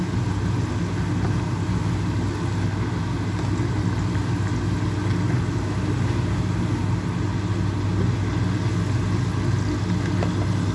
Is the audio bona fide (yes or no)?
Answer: yes